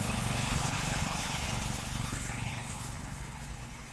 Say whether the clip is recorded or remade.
remade